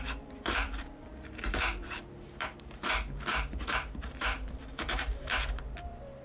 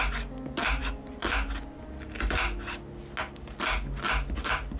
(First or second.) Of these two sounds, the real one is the second